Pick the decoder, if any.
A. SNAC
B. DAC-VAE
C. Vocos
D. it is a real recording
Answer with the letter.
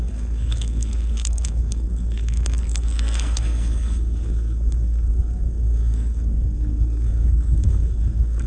A